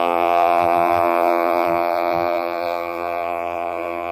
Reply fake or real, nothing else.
fake